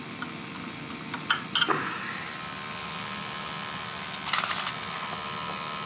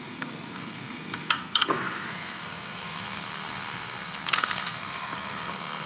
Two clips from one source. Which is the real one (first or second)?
first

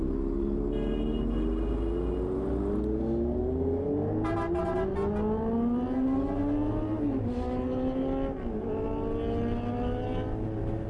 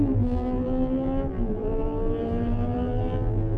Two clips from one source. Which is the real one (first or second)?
first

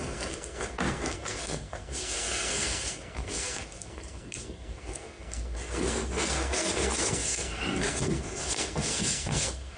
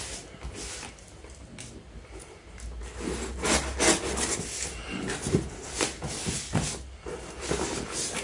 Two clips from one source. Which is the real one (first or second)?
second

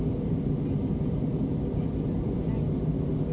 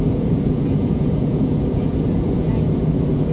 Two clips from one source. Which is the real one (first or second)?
first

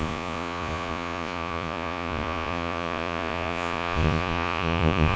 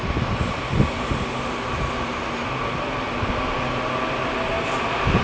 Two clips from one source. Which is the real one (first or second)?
second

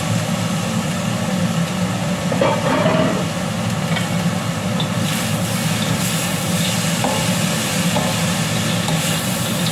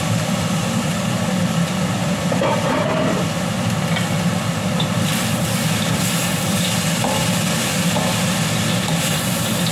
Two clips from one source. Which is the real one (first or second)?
first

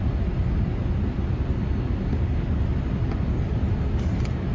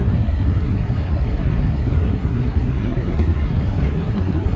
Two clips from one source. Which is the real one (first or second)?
first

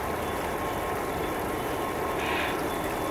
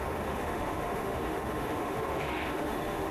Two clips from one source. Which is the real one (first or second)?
first